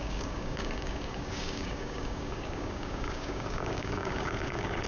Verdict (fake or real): fake